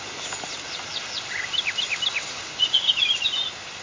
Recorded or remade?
recorded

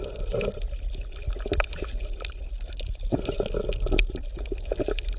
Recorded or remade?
recorded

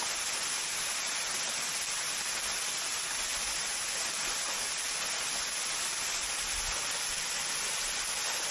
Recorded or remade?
recorded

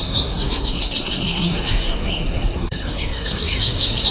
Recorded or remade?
remade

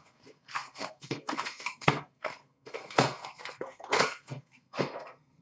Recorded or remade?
remade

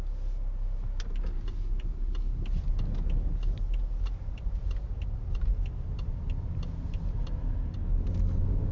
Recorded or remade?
recorded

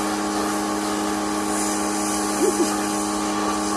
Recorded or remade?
recorded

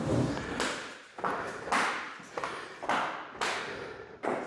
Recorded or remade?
recorded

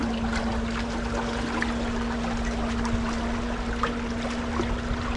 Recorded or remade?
recorded